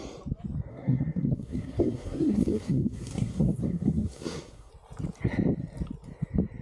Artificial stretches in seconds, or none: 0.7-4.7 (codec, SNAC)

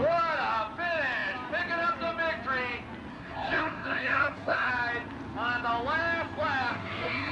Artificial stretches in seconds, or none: 3.1-4.7 (codec, SNAC); 6.7-7.3

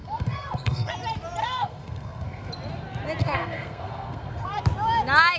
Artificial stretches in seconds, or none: 0.0-0.9 (codec, SNAC); 1.4-2.5; 3.2-4.6

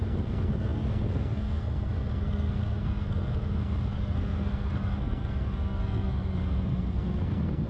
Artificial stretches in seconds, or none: 0.0-7.7 (codec, SNAC)

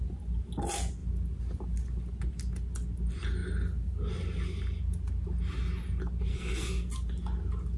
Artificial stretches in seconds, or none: 6.3-6.9 (codec, SNAC)

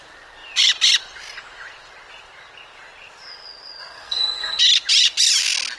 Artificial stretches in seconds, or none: 3.8-4.6 (codec, SNAC)

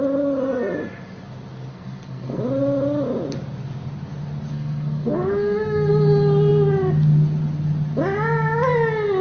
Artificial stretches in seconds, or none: 1.7-2.4 (codec, SNAC); 4.5-5.9